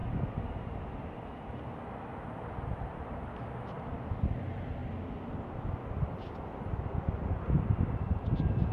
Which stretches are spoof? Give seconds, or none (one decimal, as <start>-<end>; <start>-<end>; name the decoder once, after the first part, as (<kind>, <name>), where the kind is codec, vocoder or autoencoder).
0.0-4.8 (vocoder, BigVGAN v2)